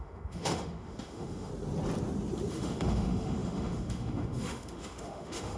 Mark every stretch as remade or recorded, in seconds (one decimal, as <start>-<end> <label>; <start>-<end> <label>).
0.0-1.5 remade; 1.5-2.5 recorded; 2.5-5.6 remade